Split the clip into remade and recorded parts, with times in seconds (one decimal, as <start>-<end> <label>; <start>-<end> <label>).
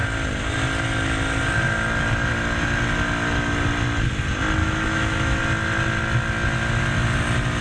0.0-4.6 recorded; 4.6-5.4 remade; 5.4-7.6 recorded